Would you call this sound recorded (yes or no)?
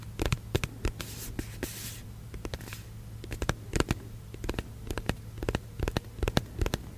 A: yes